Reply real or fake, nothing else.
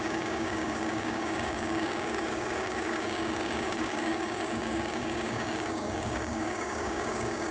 fake